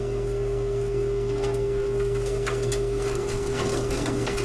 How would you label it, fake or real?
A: fake